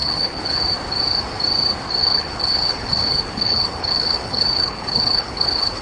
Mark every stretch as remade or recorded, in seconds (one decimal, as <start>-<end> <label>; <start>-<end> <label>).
0.0-0.6 remade; 0.6-2.0 recorded; 2.0-5.8 remade